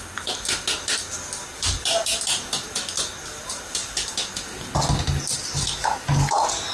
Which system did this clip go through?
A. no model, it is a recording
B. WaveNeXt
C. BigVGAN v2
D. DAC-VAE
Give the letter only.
A